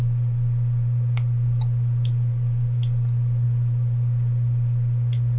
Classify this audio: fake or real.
real